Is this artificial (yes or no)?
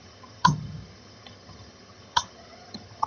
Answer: yes